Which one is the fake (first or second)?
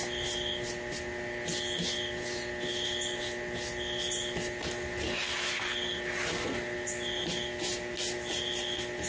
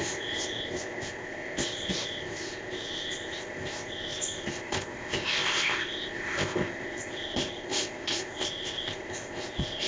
second